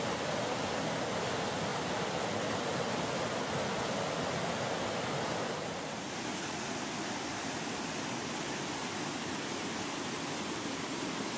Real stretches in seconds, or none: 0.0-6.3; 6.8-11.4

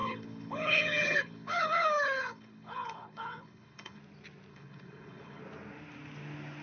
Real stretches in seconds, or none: 4.0-4.5; 5.4-6.6

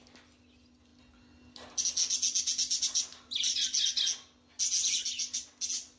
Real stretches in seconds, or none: 0.0-6.0

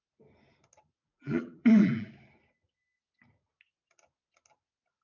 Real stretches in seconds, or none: 0.0-1.0; 2.1-5.0